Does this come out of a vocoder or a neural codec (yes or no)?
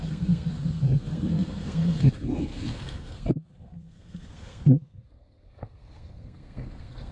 yes